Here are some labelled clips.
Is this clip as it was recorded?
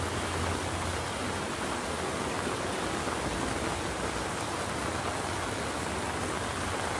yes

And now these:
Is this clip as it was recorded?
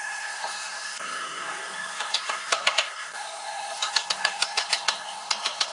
no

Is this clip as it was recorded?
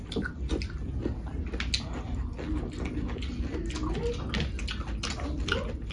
yes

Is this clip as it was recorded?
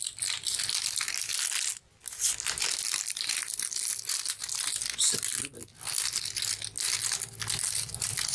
yes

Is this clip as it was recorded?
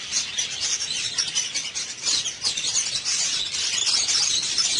yes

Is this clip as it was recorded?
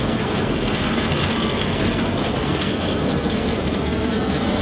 no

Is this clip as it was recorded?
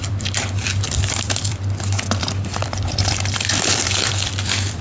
no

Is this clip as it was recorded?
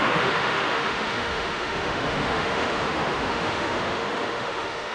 no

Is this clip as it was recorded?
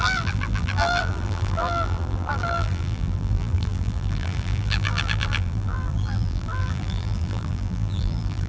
no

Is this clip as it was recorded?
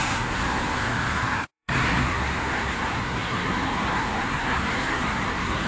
no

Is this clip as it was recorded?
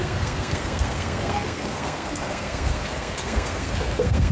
no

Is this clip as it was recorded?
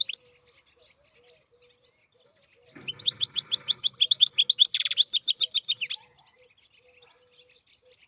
yes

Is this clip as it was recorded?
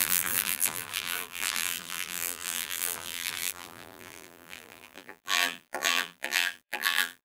no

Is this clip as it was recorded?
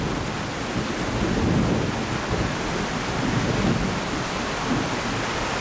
yes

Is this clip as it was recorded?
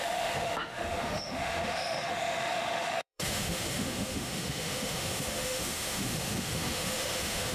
no